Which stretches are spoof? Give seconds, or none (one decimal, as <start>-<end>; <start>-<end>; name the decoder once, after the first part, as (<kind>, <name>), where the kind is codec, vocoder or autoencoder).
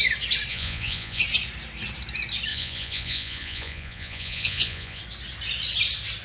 0.5-1.2 (vocoder, Vocos); 2.5-5.0